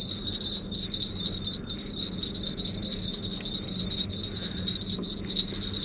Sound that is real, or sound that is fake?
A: real